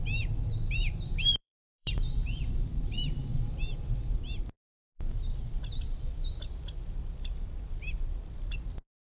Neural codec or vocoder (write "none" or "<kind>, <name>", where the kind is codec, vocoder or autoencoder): vocoder, BigVGAN v2